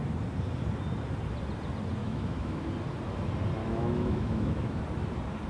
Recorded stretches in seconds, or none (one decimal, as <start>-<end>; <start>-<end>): 0.0-2.0; 2.7-3.6; 4.8-5.5